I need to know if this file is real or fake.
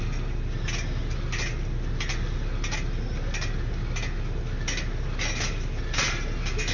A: real